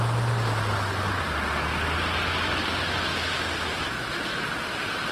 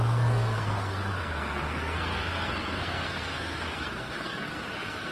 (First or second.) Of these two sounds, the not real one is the second